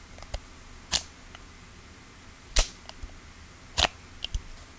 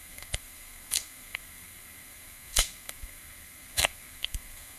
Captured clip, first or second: first